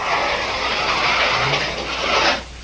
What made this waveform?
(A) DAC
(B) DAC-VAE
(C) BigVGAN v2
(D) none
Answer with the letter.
D